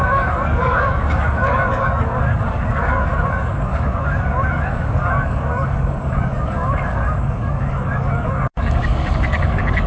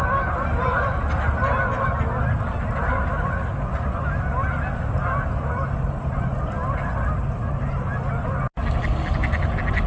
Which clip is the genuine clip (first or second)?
second